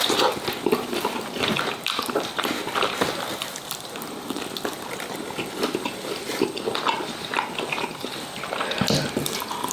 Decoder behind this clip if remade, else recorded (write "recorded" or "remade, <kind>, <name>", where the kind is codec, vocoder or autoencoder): recorded